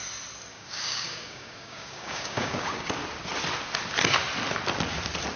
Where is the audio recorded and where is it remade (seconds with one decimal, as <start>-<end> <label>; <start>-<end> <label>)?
0.0-0.5 recorded; 0.5-2.9 remade; 2.9-5.4 recorded